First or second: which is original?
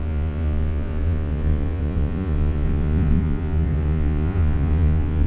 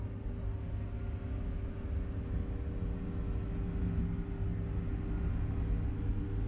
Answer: second